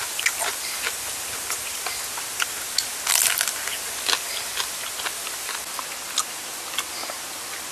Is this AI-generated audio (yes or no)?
no